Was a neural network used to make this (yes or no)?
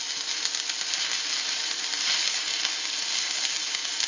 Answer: no